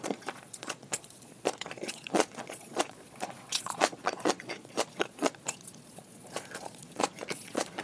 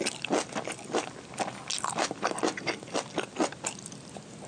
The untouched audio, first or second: second